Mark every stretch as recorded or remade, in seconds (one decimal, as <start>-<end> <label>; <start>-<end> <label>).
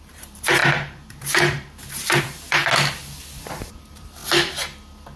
0.0-2.6 remade; 2.6-3.6 recorded; 3.6-4.2 remade; 4.2-5.2 recorded